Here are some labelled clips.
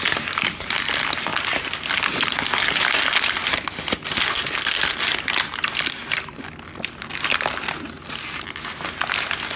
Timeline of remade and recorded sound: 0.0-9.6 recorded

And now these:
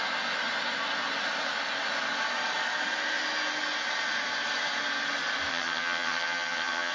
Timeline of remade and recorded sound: 0.0-5.5 recorded; 5.5-6.9 remade

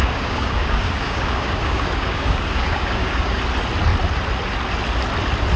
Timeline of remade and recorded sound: 0.0-3.4 remade; 3.4-5.6 recorded

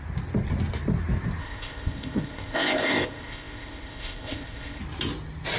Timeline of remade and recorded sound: 0.0-1.4 recorded; 1.4-4.8 remade; 4.8-5.6 recorded

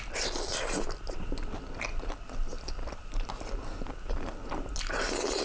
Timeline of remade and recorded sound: 0.0-5.4 recorded